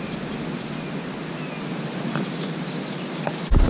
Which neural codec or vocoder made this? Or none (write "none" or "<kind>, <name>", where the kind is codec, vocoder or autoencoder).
none